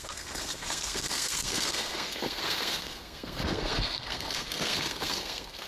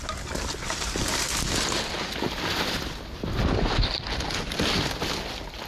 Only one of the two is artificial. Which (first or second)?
first